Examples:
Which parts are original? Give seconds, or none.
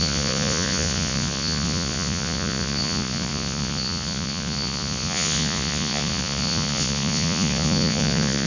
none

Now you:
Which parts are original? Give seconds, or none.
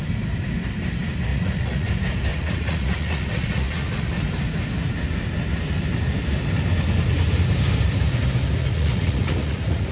0.0-1.3; 1.9-2.3; 4.1-8.6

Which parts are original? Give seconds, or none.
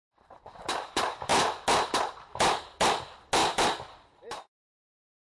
0.0-5.2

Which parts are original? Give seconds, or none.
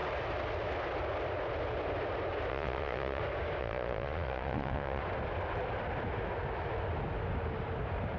0.0-2.5; 3.2-3.6; 5.0-8.2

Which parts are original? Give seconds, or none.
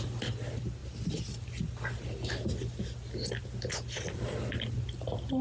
0.0-5.4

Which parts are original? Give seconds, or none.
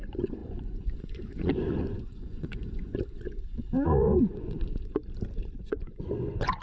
5.0-5.6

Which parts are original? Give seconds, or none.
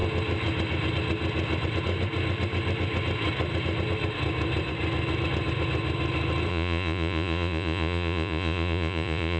0.0-6.5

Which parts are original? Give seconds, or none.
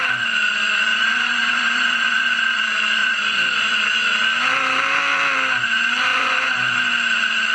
0.0-0.9; 2.6-3.0; 3.8-6.1; 6.9-7.5